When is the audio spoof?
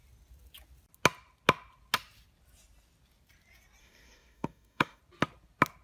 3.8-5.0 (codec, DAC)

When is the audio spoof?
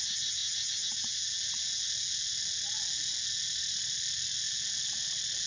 none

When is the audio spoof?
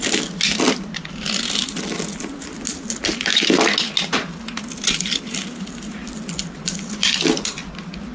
none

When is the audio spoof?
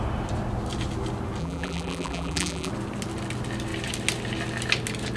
1.4-2.7 (vocoder, BigVGAN v2)